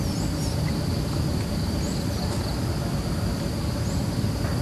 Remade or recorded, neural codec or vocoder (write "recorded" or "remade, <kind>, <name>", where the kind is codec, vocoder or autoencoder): recorded